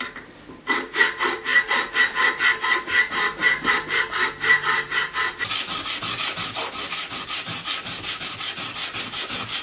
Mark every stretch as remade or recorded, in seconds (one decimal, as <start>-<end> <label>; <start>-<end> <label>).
0.0-3.4 recorded; 3.4-8.6 remade; 8.6-9.6 recorded